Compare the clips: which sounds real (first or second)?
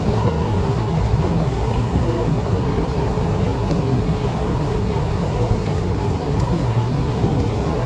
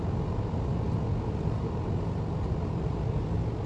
second